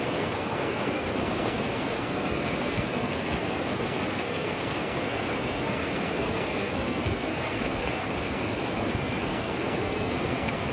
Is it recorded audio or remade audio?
remade